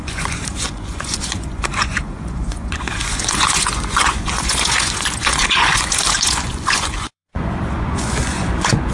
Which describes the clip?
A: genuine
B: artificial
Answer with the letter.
B